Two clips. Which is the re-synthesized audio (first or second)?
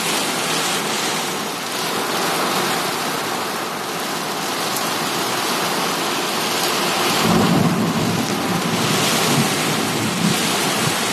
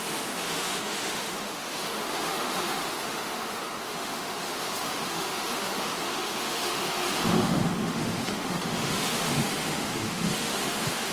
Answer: second